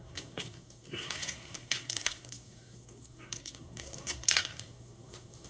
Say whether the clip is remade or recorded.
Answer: remade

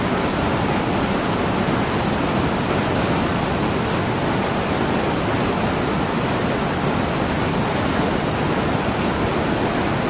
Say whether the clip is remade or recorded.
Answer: recorded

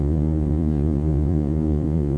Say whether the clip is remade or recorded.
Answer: remade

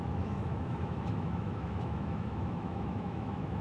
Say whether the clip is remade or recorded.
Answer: remade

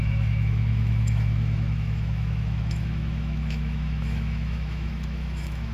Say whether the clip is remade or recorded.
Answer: remade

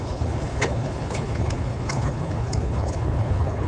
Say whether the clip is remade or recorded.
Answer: remade